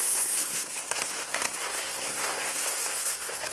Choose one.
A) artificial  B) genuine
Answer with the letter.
A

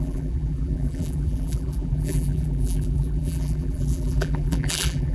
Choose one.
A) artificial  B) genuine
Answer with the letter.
A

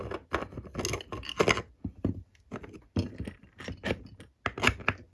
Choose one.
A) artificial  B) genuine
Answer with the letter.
B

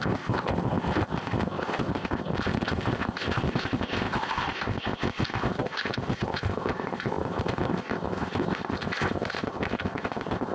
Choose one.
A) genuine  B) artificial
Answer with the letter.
B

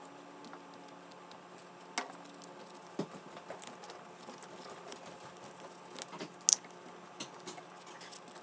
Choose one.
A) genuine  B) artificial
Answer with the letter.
A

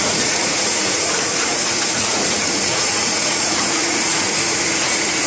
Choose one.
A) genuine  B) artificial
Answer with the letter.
B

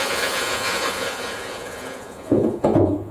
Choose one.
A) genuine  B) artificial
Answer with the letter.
B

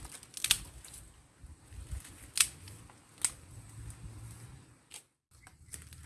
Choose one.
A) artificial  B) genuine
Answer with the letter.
B